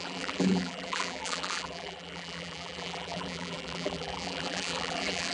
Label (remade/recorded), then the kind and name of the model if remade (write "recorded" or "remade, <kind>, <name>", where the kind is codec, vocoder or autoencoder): remade, vocoder, BigVGAN v2